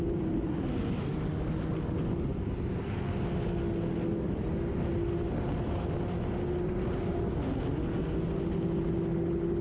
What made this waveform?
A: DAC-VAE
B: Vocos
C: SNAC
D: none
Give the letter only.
D